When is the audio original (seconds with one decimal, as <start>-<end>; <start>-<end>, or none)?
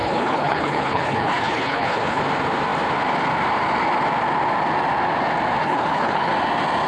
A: 2.2-5.6; 6.3-6.9